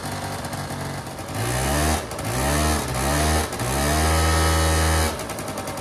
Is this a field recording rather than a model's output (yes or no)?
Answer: yes